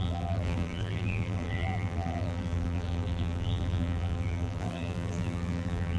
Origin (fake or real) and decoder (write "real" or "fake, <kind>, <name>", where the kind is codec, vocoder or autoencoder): fake, vocoder, BigVGAN v2